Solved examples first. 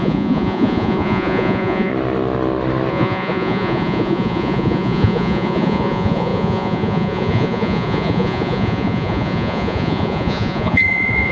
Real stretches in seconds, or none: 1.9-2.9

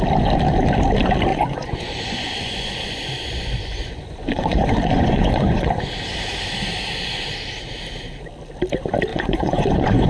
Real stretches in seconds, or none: 0.0-1.3; 5.8-9.1

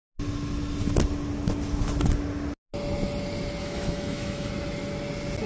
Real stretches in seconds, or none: 0.0-3.6; 4.5-5.5